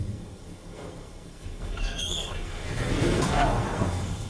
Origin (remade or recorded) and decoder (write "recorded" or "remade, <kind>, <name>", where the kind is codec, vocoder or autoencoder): remade, codec, SNAC